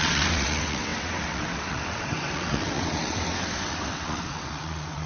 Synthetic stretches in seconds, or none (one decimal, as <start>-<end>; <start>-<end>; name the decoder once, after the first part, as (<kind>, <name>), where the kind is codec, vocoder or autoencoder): 0.0-5.1 (vocoder, WaveNeXt)